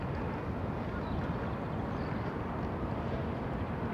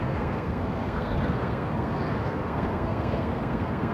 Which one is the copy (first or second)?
second